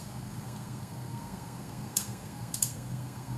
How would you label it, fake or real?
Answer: fake